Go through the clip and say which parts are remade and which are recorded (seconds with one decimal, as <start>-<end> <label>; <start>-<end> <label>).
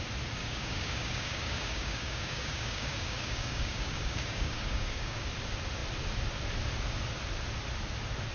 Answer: 0.0-0.4 recorded; 0.4-5.3 remade; 5.3-8.3 recorded